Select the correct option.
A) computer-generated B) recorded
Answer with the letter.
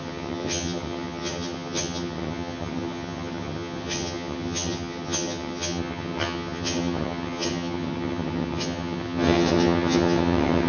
A